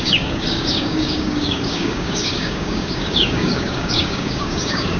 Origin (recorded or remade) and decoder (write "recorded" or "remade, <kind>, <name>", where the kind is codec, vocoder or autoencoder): remade, codec, DAC